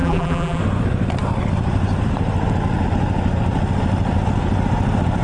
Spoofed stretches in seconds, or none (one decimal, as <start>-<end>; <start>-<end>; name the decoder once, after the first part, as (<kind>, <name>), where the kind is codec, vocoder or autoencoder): 0.0-0.6 (vocoder, BigVGAN v2)